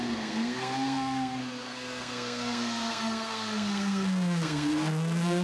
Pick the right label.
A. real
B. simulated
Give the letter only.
B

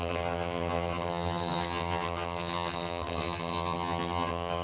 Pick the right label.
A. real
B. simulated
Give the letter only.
B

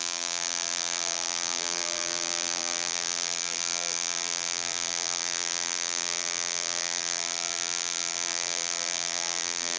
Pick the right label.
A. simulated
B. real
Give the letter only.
A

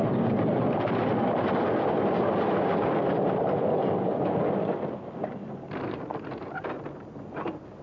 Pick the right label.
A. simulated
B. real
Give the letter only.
B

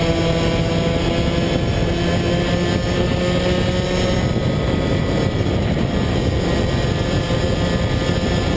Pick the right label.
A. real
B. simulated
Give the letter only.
A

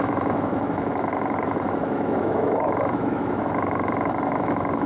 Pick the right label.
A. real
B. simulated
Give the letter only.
B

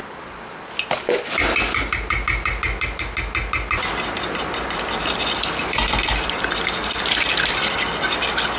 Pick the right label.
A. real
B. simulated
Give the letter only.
A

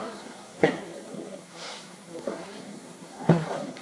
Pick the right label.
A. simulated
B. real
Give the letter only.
A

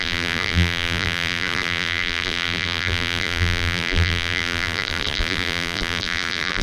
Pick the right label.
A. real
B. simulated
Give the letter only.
B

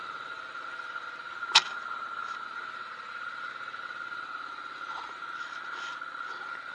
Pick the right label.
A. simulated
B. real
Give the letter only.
B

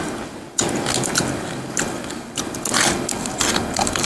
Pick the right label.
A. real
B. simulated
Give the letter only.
A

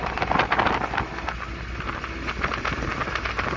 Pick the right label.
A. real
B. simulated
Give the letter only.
A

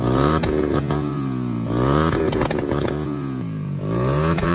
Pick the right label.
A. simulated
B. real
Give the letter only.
A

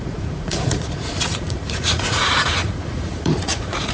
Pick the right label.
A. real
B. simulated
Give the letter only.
B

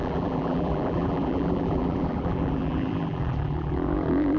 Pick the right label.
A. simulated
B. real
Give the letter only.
A